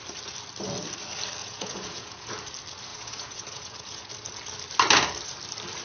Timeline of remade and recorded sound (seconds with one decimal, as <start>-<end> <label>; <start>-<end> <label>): 0.0-1.4 recorded; 1.4-2.3 remade; 2.3-2.9 recorded; 2.9-4.1 remade; 4.1-5.8 recorded